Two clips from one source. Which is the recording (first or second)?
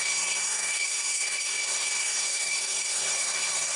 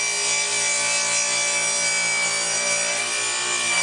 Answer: second